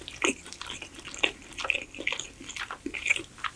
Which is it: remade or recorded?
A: recorded